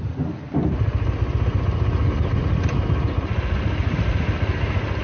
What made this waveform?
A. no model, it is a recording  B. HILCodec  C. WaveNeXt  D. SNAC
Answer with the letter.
A